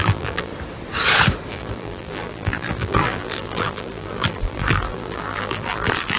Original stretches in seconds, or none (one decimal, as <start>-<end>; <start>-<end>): 0.5-1.5